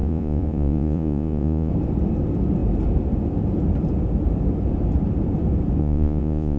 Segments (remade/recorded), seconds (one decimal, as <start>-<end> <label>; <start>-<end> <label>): 0.0-1.7 remade; 1.7-5.8 recorded; 5.8-6.6 remade